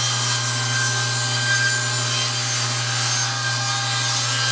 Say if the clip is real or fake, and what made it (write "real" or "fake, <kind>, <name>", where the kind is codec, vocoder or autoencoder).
real